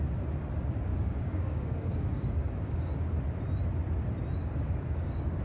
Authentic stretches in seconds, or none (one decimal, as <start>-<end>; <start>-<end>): 0.0-0.9; 3.0-4.4